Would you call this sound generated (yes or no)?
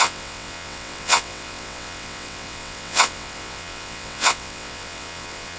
yes